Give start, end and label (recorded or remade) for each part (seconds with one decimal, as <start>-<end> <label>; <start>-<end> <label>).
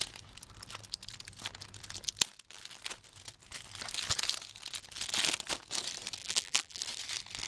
0.0-6.2 recorded; 6.2-6.8 remade; 6.8-7.5 recorded